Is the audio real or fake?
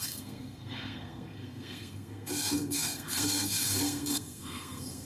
fake